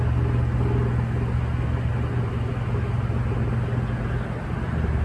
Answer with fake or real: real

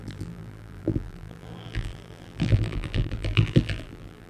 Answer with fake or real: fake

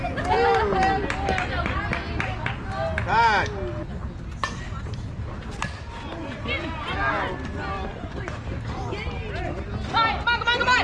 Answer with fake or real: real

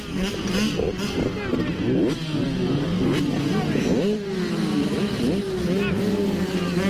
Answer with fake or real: real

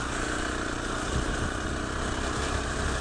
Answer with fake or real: real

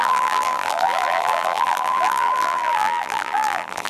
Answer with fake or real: fake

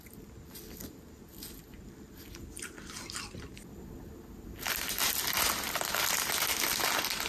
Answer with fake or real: real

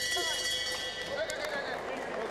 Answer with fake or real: real